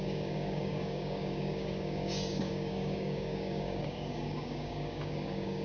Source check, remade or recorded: remade